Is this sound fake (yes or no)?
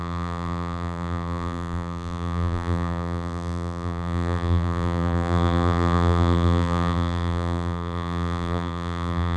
yes